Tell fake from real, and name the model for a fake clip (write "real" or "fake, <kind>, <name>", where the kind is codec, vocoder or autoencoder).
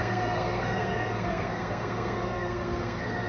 fake, codec, SNAC